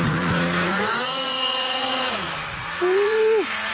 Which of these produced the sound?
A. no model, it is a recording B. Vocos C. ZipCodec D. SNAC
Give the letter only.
B